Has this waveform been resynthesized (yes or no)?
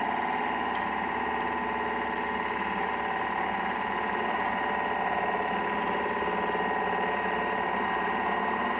no